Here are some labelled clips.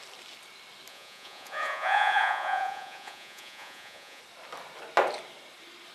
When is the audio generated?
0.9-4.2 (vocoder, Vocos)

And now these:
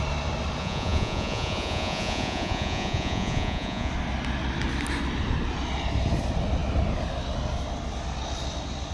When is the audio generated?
0.6-3.9 (vocoder, Vocos)